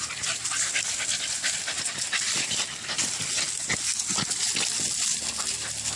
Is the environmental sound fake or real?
real